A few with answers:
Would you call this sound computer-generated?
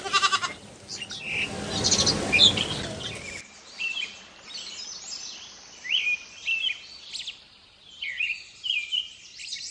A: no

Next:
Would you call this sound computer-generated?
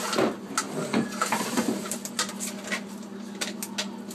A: no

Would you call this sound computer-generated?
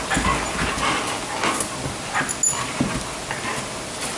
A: no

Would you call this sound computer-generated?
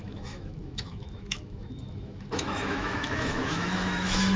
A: yes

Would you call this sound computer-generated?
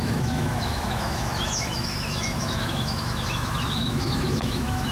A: yes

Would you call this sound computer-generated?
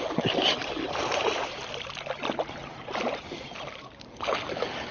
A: no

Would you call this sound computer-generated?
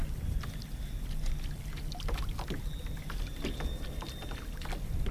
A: no